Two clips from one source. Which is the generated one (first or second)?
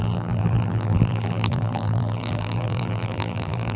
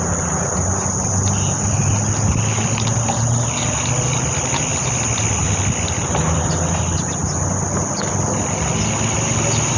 first